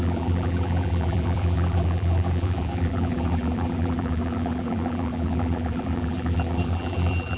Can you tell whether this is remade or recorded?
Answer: remade